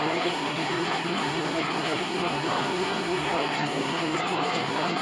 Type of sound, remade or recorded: remade